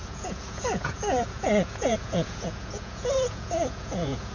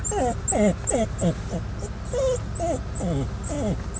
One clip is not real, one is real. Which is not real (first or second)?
first